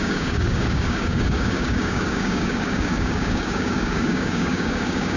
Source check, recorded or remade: remade